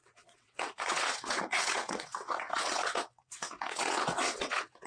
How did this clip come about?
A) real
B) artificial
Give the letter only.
B